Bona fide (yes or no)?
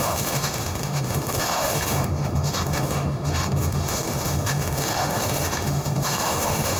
no